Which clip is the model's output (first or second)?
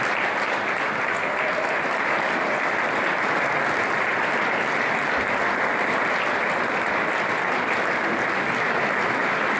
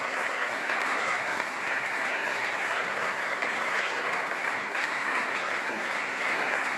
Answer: second